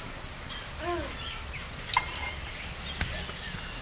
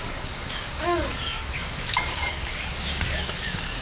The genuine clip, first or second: first